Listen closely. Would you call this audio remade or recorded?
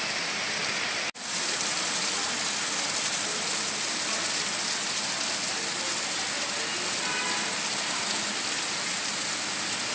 recorded